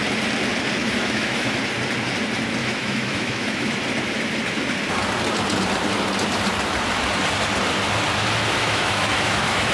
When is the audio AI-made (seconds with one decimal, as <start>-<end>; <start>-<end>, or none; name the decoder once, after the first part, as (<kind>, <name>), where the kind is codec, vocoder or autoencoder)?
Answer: 0.8-1.6 (autoencoder, DAC-VAE); 2.6-3.7; 8.6-9.7